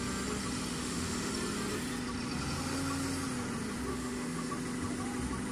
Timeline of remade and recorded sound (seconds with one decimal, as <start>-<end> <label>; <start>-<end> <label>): 0.0-0.7 recorded; 0.7-1.3 remade; 1.3-3.9 recorded; 3.9-4.5 remade; 4.5-5.5 recorded

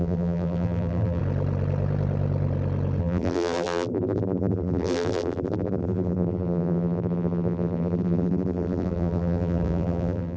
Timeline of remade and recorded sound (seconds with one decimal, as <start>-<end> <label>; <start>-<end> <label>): 0.0-1.2 remade; 1.2-3.0 recorded; 3.0-10.4 remade

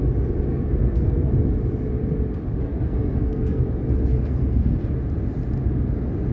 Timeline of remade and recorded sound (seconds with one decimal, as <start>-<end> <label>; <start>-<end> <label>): 0.0-0.5 recorded; 0.5-1.3 remade; 1.3-2.7 recorded; 2.7-3.6 remade; 3.6-4.1 recorded; 4.1-4.7 remade; 4.7-6.3 recorded

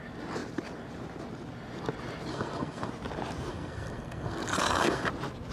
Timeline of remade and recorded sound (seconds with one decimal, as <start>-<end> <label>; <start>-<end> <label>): 0.0-2.3 recorded; 2.3-2.9 remade; 2.9-3.5 recorded; 3.5-5.1 remade; 5.1-5.5 recorded

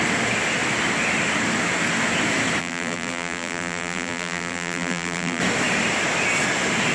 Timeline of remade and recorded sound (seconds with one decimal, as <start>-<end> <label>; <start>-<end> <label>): 0.0-2.6 recorded; 2.6-5.4 remade; 5.4-6.9 recorded